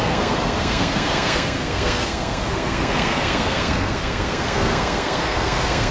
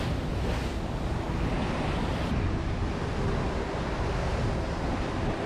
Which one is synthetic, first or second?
first